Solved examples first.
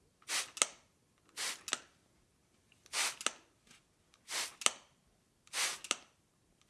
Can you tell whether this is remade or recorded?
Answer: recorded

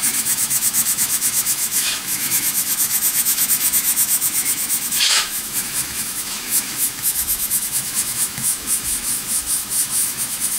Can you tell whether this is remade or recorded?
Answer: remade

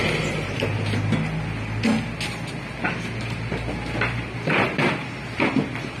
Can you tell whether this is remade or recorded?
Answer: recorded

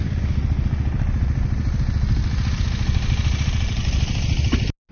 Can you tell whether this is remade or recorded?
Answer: recorded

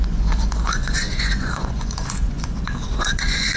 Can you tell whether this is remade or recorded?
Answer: remade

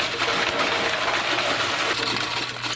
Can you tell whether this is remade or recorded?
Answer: recorded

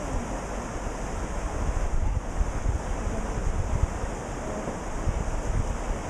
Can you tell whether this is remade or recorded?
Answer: recorded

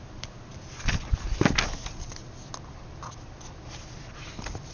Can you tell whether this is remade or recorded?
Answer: recorded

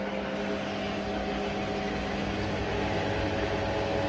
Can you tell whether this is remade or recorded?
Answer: recorded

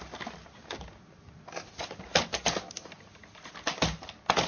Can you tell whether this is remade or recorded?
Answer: recorded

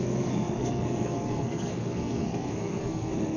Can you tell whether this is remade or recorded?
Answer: remade